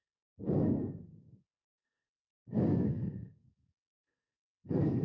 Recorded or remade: remade